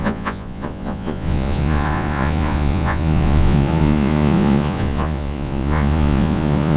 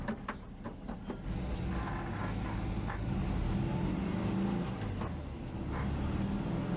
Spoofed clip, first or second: first